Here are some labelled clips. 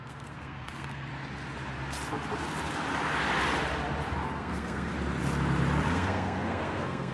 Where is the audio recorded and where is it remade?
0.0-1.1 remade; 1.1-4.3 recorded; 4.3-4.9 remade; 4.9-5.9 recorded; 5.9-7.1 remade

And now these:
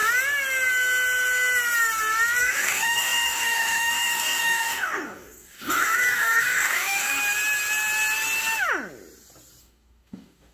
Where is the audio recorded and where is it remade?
0.0-2.4 recorded; 2.4-7.2 remade; 7.2-9.6 recorded; 9.6-10.5 remade

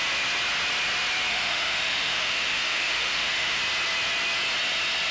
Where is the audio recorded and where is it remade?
0.0-1.3 recorded; 1.3-3.6 remade; 3.6-5.1 recorded

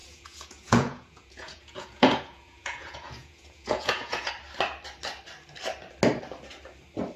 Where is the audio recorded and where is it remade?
0.0-4.3 remade; 4.3-7.2 recorded

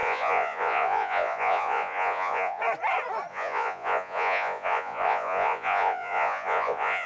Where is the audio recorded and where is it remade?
0.0-2.6 remade; 2.6-3.3 recorded; 3.3-7.1 remade

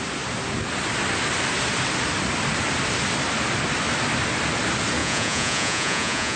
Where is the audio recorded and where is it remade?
0.0-5.0 recorded; 5.0-6.4 remade

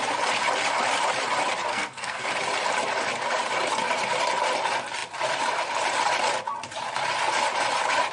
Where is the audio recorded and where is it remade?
0.0-1.7 recorded; 1.7-2.3 remade; 2.3-8.1 recorded